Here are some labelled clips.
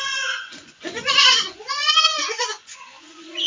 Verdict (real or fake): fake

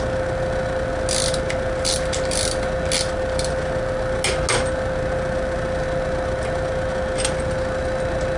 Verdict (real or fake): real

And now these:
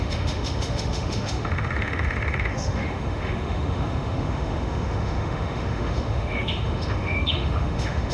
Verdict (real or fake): fake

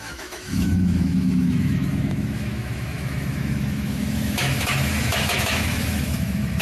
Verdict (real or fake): fake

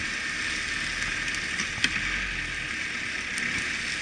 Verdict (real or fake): real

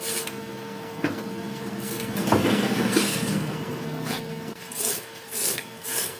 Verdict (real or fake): fake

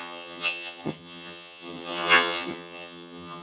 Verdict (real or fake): fake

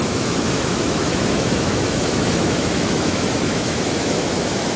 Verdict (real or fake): fake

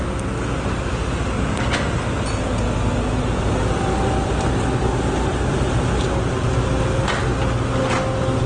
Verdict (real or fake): real